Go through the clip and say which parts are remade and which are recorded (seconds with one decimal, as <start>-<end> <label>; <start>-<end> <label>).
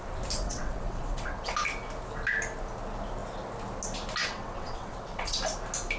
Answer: 0.0-0.4 recorded; 0.4-1.5 remade; 1.5-4.2 recorded; 4.2-5.4 remade; 5.4-6.0 recorded